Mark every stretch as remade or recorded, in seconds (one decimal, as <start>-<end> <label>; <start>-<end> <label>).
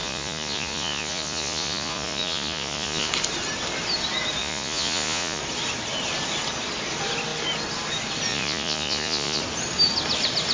0.0-3.1 remade; 3.1-4.4 recorded; 4.4-5.4 remade; 5.4-8.3 recorded; 8.3-9.4 remade; 9.4-10.5 recorded